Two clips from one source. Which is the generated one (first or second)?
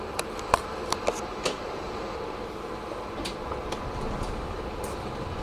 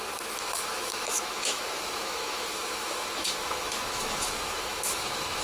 second